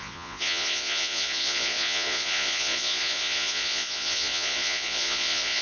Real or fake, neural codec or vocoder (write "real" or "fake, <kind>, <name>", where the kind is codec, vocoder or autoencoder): fake, vocoder, Vocos